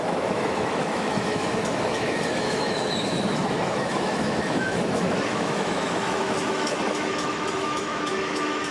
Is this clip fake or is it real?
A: fake